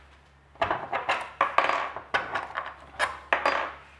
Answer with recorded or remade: recorded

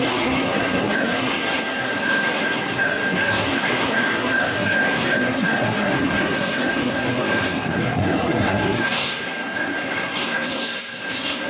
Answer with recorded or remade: remade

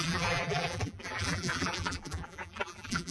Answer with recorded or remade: remade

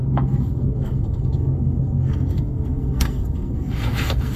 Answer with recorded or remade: remade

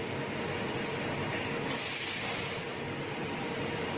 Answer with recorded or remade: recorded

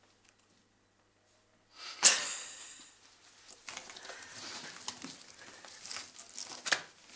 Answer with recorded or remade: recorded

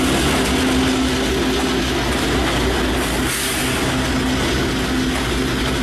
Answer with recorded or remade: recorded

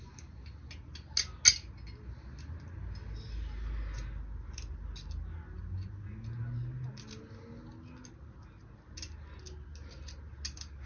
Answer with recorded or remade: recorded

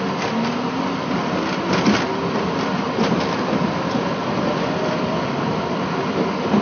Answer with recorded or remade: recorded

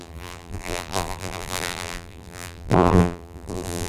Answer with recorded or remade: remade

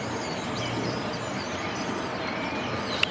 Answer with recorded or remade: remade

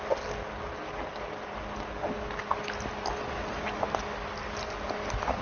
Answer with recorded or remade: recorded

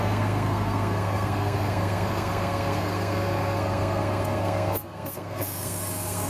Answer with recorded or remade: remade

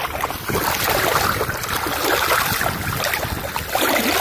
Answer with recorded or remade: recorded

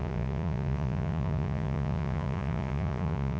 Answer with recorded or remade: remade